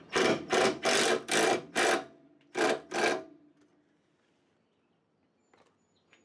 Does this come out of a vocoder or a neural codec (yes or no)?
yes